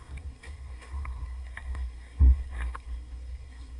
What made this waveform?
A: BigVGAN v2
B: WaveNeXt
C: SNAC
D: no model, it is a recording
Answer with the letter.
C